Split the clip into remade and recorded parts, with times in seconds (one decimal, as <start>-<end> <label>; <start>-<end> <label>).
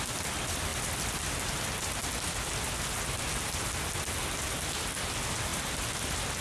0.0-6.4 recorded